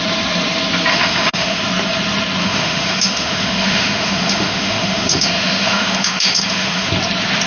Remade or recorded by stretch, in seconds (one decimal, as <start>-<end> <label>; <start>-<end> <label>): 0.0-0.9 recorded; 0.9-1.6 remade; 1.6-2.4 recorded; 2.4-6.9 remade; 6.9-7.5 recorded

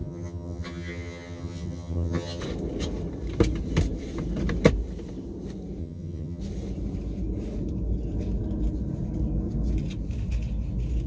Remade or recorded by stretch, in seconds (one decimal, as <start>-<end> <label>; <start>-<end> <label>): 0.0-2.4 remade; 2.4-5.8 recorded; 5.8-6.4 remade; 6.4-11.1 recorded

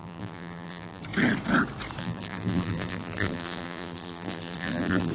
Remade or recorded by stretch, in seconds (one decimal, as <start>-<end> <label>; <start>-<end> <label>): 0.0-1.0 remade; 1.0-2.0 recorded; 2.0-5.1 remade

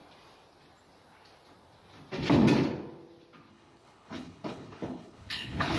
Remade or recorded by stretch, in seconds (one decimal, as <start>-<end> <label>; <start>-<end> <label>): 0.0-3.5 recorded; 3.5-5.8 remade

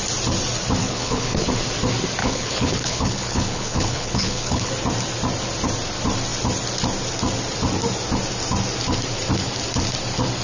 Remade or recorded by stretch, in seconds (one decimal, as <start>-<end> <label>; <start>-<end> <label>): 0.0-0.8 recorded; 0.8-1.5 remade; 1.5-2.2 recorded; 2.2-4.7 remade; 4.7-10.4 recorded